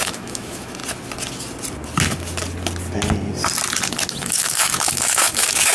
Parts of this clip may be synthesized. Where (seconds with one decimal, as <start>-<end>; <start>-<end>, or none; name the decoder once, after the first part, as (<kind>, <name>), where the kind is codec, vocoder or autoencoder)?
0.0-0.8 (autoencoder, DAC-VAE); 4.2-5.7